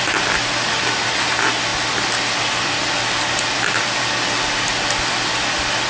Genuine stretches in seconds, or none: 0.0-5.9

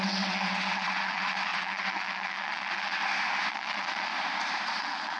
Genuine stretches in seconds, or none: 3.0-3.5; 4.1-4.8

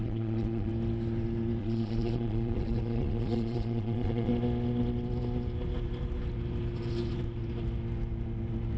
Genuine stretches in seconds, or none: 0.7-1.6; 4.3-8.8

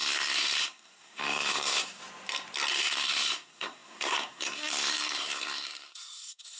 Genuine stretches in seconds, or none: 2.0-2.7

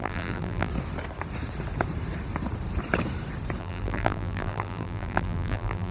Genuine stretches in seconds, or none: 0.7-3.6

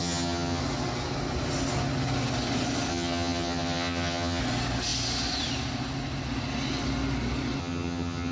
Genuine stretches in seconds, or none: 0.6-2.9; 4.4-7.6

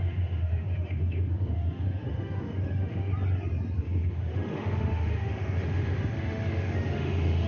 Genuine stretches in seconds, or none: 3.1-3.8

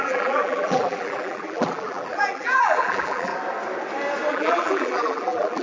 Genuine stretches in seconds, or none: 3.3-4.3